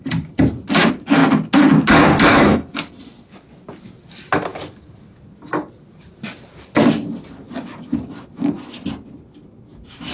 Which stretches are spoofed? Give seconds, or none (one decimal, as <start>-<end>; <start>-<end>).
2.3-2.8